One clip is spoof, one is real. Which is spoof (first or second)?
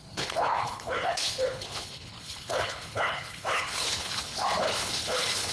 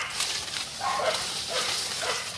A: first